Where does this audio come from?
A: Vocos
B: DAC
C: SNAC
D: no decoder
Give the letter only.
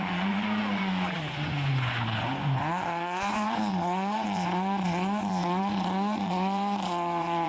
A